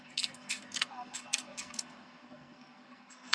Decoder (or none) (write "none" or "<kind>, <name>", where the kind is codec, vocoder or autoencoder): codec, SNAC